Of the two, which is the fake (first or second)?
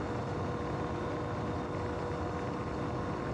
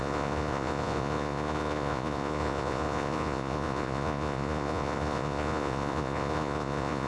second